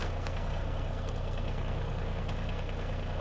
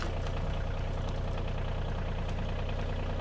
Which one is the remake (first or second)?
first